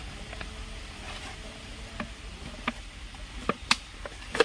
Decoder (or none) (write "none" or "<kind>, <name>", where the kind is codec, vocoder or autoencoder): none